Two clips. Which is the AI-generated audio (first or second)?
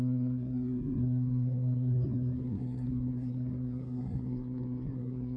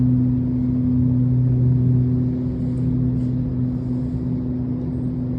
first